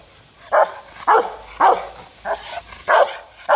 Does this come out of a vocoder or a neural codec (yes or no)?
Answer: no